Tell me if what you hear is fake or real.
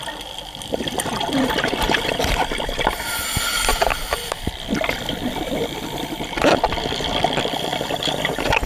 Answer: fake